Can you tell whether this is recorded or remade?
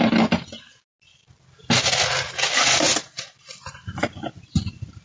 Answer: recorded